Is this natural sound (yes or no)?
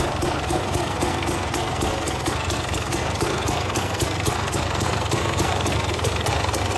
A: no